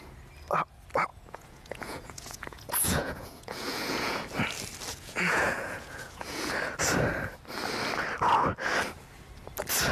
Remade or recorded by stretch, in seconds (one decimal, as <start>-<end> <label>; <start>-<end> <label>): 0.0-1.1 recorded; 1.1-4.2 remade; 4.2-4.9 recorded; 4.9-6.5 remade; 6.5-9.9 recorded